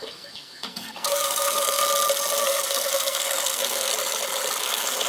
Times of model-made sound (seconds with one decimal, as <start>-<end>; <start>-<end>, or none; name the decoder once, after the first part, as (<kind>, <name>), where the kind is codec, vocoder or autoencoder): 0.0-1.8 (codec, SNAC); 2.4-3.9; 4.6-5.1